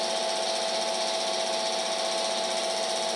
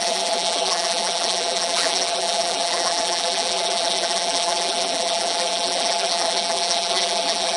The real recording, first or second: first